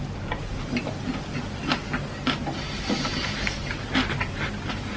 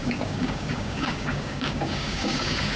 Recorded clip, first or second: first